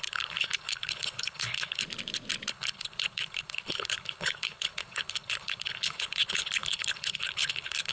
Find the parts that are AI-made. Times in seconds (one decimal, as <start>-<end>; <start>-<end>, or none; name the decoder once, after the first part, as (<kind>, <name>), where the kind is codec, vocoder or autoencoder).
0.0-1.8 (codec, HILCodec); 2.5-7.9